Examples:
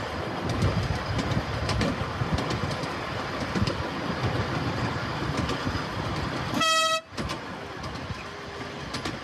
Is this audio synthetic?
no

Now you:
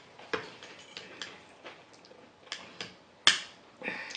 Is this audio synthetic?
no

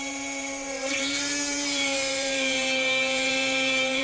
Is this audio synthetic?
yes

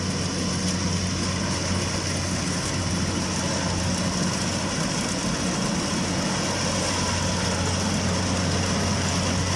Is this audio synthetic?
no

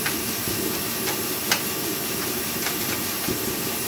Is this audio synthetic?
yes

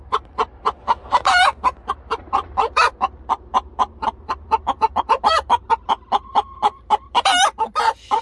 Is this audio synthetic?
yes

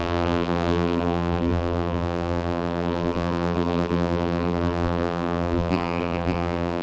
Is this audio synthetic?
yes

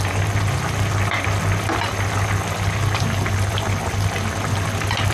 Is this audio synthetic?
no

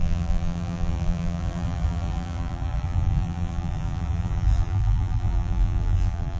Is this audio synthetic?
yes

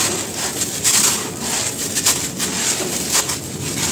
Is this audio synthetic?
no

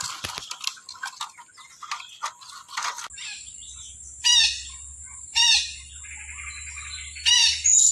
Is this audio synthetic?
no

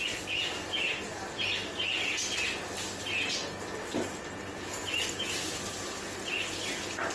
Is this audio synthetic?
no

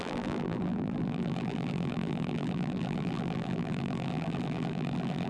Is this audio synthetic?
yes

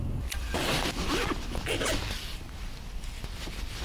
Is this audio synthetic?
yes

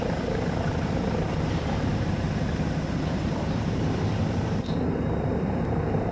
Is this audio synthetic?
yes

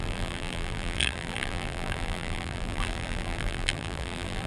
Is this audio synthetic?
yes